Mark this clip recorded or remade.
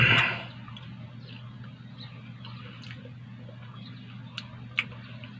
recorded